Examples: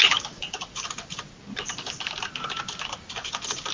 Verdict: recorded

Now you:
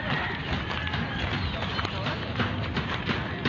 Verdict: recorded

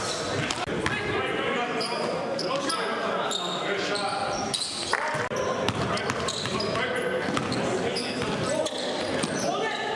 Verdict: recorded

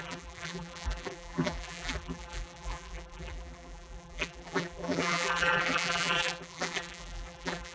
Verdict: remade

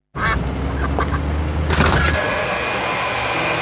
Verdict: recorded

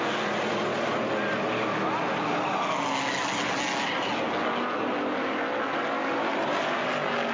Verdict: recorded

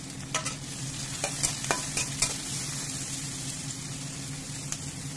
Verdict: recorded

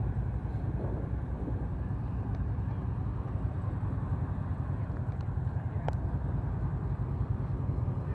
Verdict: remade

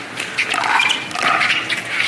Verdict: recorded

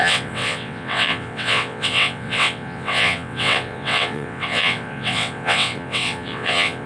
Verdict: remade